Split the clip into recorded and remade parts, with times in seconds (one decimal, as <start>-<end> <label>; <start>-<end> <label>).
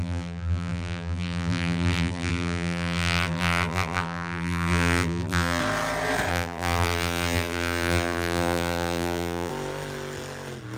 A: 0.0-5.6 remade; 5.6-6.3 recorded; 6.3-9.5 remade; 9.5-10.8 recorded